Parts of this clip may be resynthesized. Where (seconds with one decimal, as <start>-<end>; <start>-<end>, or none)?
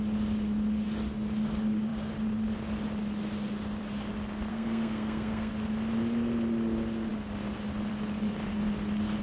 4.5-5.5